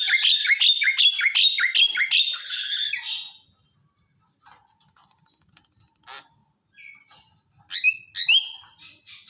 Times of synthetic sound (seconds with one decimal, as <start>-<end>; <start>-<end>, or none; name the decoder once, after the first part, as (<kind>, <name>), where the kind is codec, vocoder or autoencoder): none